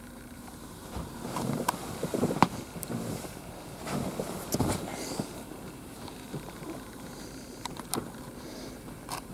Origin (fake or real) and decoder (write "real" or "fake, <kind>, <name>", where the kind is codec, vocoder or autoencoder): fake, vocoder, BigVGAN v2